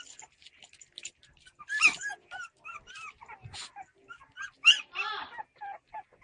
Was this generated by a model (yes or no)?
no